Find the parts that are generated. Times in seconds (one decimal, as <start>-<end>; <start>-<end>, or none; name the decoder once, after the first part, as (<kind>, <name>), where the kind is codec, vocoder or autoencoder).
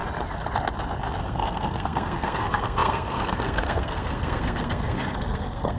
1.2-5.8 (codec, SNAC)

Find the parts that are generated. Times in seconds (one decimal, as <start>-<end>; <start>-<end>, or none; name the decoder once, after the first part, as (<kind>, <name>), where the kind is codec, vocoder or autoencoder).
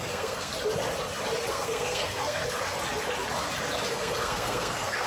0.0-0.5 (codec, SNAC); 1.5-2.4; 3.9-5.1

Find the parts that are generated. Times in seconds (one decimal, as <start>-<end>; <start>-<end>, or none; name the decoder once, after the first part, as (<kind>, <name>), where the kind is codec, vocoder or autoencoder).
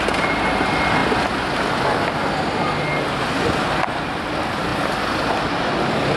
none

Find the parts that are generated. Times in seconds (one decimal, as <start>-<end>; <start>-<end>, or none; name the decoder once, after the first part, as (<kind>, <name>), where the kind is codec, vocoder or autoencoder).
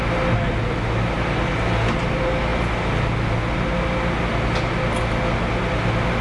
none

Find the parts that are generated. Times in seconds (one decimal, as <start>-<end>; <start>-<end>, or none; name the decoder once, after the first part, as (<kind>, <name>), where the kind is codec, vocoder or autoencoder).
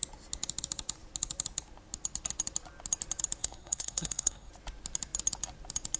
3.4-4.5 (codec, SNAC)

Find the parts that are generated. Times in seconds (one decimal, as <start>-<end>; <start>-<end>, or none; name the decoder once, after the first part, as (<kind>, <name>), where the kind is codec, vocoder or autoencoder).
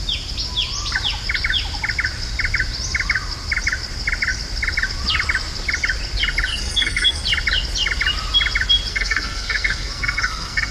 6.5-7.2 (codec, SNAC); 8.9-10.7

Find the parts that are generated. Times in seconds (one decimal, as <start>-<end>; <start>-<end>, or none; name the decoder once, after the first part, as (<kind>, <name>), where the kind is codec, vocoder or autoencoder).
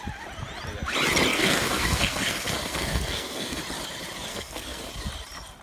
1.3-3.6 (codec, SNAC); 4.3-4.9